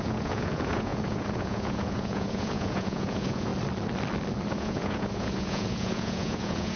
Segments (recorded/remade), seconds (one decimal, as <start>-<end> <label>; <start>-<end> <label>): 0.0-3.5 remade; 3.5-4.5 recorded; 4.5-6.8 remade